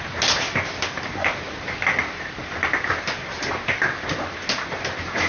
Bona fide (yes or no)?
yes